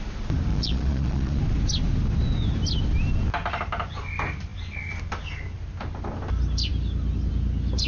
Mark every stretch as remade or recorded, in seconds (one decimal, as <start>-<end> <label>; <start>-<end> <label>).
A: 0.0-0.5 recorded; 0.5-1.4 remade; 1.4-7.9 recorded